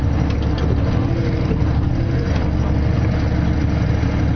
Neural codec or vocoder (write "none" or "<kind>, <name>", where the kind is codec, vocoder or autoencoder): none